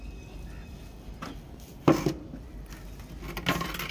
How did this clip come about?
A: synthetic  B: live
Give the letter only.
B